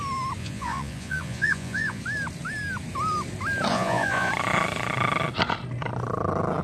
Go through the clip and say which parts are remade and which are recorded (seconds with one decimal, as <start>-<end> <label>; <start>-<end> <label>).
0.0-0.4 recorded; 0.4-2.0 remade; 2.0-3.7 recorded; 3.7-4.3 remade; 4.3-6.6 recorded